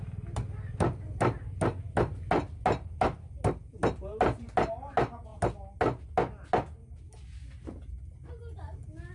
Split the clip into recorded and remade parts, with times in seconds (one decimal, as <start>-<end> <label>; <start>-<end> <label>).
0.0-9.1 recorded